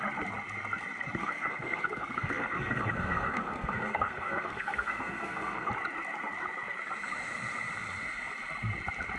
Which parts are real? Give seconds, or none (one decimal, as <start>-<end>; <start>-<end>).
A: 0.0-1.2; 5.7-9.2